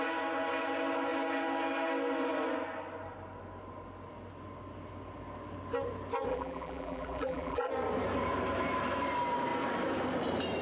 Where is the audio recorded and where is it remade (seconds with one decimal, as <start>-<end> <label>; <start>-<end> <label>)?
0.0-6.3 recorded; 6.3-7.7 remade; 7.7-10.6 recorded